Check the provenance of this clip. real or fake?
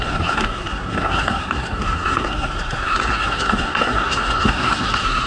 fake